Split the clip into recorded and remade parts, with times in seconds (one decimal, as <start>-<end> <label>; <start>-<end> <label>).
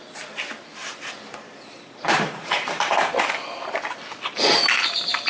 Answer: 0.0-0.8 recorded; 0.8-3.4 remade; 3.4-5.3 recorded